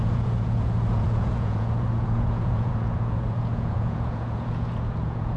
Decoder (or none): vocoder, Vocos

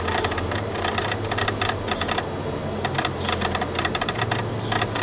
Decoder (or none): none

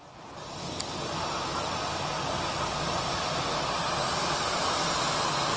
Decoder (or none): none